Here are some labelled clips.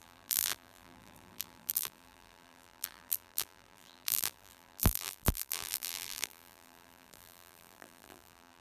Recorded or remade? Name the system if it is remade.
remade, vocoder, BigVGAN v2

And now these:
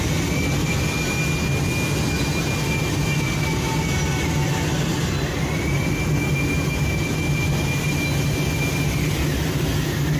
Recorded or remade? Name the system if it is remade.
recorded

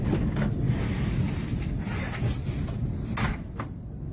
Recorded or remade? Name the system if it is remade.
recorded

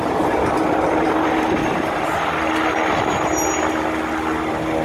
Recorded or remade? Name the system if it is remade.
recorded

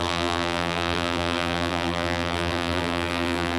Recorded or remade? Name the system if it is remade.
remade, vocoder, BigVGAN v2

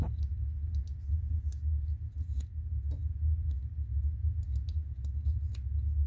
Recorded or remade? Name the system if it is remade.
recorded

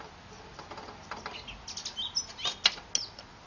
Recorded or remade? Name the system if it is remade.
recorded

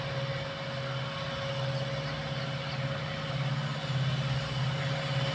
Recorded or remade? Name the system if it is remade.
recorded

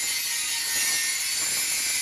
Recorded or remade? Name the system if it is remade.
recorded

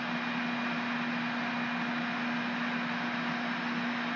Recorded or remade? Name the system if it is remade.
recorded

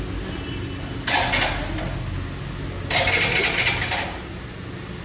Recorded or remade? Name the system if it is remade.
recorded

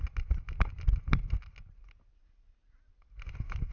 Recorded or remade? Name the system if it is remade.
recorded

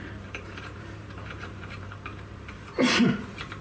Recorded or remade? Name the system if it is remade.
remade, vocoder, BigVGAN v2